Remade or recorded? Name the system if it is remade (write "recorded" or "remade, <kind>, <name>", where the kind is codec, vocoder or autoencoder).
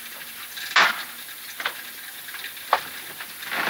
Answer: recorded